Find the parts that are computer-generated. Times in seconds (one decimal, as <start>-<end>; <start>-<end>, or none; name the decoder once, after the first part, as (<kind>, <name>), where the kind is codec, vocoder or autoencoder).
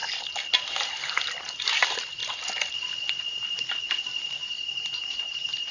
0.9-4.4 (vocoder, BigVGAN v2); 5.0-5.7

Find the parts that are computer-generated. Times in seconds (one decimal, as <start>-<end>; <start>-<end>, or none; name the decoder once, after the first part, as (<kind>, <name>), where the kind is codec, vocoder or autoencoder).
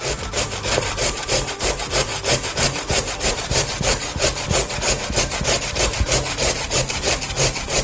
0.0-2.1 (vocoder, BigVGAN v2); 3.3-4.1; 5.6-7.8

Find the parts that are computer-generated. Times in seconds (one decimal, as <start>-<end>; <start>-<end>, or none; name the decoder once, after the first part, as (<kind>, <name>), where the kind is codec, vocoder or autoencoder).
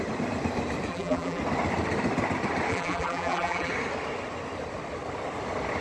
0.9-1.4 (vocoder, BigVGAN v2); 2.7-3.7